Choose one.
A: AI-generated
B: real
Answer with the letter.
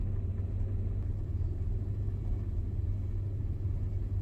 B